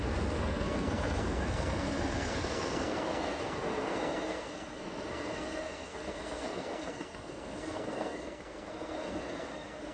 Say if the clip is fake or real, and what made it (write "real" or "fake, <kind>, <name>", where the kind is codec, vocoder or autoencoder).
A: fake, codec, SNAC